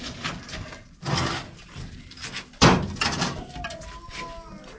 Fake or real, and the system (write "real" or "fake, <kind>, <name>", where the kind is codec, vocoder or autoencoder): real